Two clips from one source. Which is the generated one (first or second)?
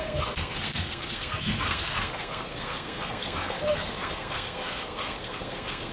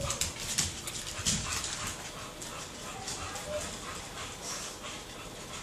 first